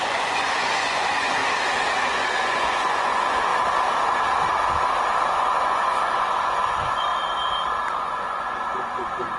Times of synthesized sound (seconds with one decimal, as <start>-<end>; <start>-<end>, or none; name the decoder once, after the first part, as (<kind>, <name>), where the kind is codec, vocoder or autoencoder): 0.0-1.4 (vocoder, Vocos); 2.1-3.5; 5.3-7.1; 7.9-9.4